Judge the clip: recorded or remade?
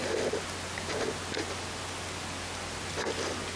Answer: recorded